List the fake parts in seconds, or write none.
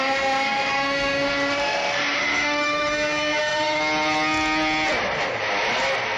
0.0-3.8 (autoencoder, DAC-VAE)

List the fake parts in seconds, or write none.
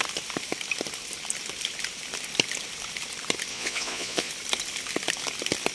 3.5-4.3 (vocoder, Vocos)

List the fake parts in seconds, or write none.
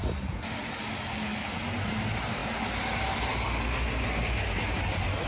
none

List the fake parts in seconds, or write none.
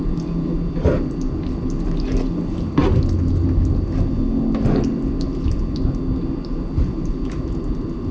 none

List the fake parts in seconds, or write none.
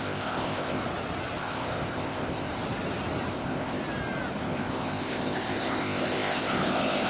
0.0-0.8 (codec, ZipCodec); 1.4-2.5; 3.3-3.8; 4.4-7.1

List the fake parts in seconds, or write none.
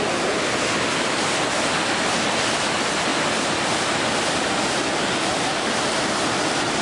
3.1-4.8 (vocoder, BigVGAN v2)